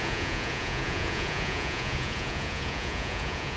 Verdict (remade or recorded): remade